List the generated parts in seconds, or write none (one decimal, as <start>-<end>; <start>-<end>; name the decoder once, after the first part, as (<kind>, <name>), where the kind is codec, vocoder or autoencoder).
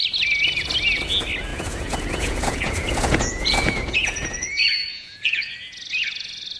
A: 1.5-5.5 (vocoder, Vocos)